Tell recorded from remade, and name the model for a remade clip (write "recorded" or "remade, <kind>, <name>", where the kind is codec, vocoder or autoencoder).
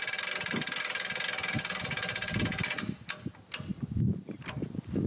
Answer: recorded